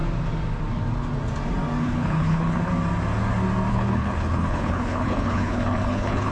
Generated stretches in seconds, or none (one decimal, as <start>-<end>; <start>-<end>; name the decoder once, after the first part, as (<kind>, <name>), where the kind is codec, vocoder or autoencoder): 1.8-2.7 (codec, HILCodec); 3.7-6.3